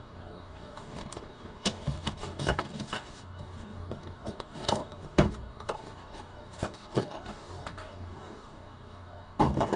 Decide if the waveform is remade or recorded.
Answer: remade